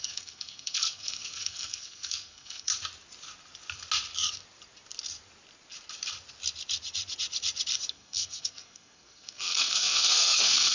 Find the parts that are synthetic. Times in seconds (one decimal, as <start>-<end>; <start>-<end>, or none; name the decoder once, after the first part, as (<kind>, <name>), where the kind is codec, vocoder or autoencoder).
0.0-2.7 (codec, SNAC); 7.9-10.7